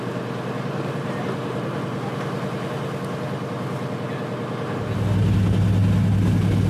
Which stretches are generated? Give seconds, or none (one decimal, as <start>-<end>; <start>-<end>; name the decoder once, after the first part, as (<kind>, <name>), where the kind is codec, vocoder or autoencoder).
none

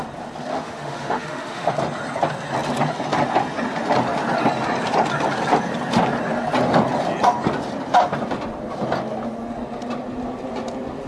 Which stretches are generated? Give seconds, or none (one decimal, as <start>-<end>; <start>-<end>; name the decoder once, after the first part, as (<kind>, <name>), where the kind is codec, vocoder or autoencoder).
0.5-1.7 (autoencoder, DAC-VAE)

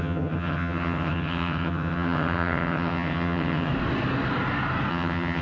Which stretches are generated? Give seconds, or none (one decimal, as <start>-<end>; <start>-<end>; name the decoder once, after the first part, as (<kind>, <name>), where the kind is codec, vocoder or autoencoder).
0.0-3.7 (vocoder, HiFi-GAN); 4.9-5.4

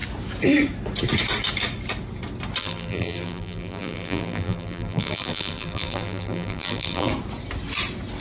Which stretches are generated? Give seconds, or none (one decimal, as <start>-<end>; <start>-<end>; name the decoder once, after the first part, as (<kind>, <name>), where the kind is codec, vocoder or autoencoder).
2.6-7.1 (vocoder, BigVGAN v2)

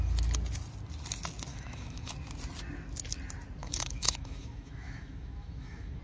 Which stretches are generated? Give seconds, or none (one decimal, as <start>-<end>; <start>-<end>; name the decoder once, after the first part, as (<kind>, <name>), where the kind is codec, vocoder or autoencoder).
1.5-2.1 (autoencoder, DAC-VAE); 3.6-6.0

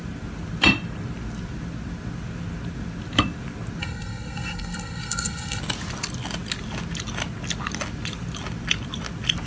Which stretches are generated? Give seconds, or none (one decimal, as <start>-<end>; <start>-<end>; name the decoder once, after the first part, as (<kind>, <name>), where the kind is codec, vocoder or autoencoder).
3.8-5.6 (codec, SNAC)